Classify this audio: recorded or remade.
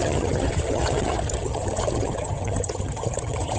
remade